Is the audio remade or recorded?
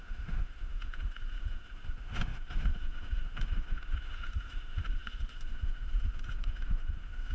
remade